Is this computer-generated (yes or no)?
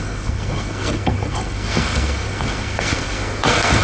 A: yes